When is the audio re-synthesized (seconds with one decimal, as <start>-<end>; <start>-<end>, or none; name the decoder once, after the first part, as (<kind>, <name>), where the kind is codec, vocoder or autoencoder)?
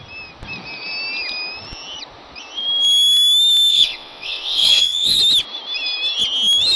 3.7-5.2 (vocoder, WaveNeXt)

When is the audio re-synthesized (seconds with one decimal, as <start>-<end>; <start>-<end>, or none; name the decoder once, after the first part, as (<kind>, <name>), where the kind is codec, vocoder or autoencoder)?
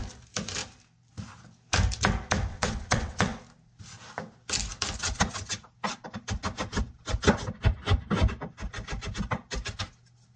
2.5-3.4 (vocoder, WaveNeXt)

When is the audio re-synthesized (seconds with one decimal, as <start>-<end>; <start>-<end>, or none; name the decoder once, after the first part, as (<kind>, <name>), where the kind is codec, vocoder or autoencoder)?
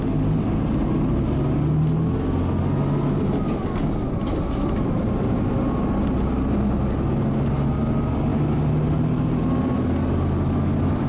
none